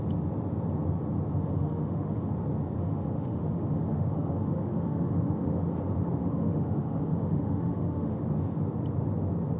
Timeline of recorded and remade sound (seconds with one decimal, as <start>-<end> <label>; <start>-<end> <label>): 0.0-1.3 recorded; 1.3-2.3 remade; 2.3-2.8 recorded; 2.8-5.7 remade; 5.7-6.2 recorded; 6.2-8.2 remade; 8.2-9.6 recorded

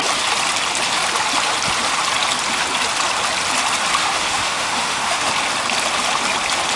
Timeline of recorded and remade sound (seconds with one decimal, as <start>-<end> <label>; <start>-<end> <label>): 0.0-4.0 recorded; 4.0-5.3 remade; 5.3-6.8 recorded

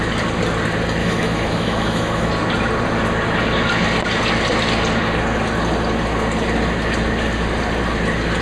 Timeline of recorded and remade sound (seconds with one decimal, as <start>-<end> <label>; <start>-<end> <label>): 0.0-1.0 recorded; 1.0-2.3 remade; 2.3-8.4 recorded

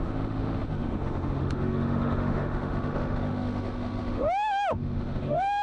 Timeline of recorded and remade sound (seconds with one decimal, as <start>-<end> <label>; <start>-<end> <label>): 0.0-5.6 remade

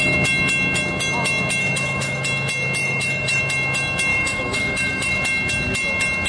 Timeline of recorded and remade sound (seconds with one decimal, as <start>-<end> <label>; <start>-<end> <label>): 0.0-1.6 recorded; 1.6-2.2 remade; 2.2-2.8 recorded; 2.8-3.4 remade; 3.4-4.1 recorded; 4.1-5.2 remade; 5.2-6.3 recorded

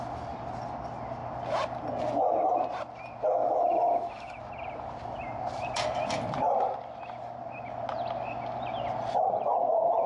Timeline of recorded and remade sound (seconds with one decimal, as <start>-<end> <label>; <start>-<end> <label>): 0.0-3.4 recorded; 3.4-4.4 remade; 4.4-10.1 recorded